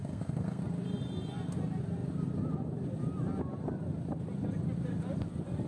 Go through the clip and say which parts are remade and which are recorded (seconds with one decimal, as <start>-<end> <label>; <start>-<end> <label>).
0.0-0.6 remade; 0.6-5.7 recorded